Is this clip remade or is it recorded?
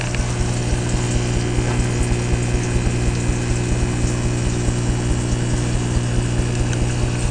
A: recorded